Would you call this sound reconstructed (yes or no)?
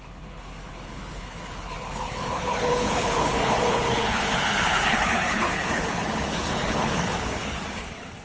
yes